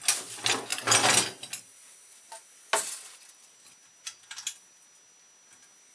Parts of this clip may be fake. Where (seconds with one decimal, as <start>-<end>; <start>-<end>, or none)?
none